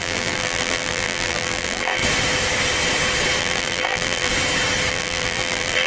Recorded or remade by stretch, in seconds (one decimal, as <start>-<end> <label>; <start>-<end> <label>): 0.0-2.0 remade; 2.0-3.4 recorded; 3.4-4.3 remade; 4.3-4.9 recorded; 4.9-5.9 remade